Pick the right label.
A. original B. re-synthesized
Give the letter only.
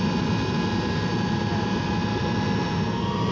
A